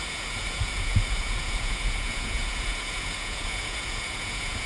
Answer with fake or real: fake